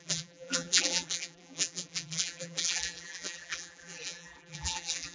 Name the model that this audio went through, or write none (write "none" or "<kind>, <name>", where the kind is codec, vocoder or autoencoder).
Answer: vocoder, BigVGAN v2